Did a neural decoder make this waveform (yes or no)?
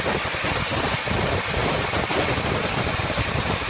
no